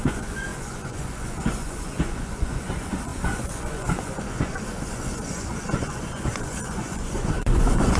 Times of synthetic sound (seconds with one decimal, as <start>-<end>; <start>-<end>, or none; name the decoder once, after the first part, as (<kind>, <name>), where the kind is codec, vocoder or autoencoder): 0.0-8.0 (vocoder, Vocos)